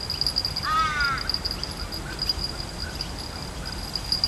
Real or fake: real